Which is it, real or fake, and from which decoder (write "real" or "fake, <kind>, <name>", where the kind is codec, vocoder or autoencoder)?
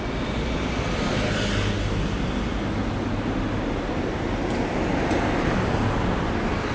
real